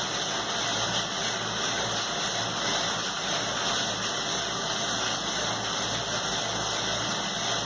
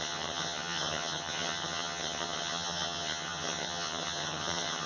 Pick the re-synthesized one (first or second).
second